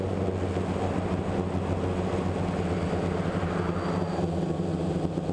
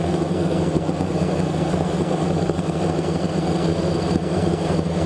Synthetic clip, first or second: second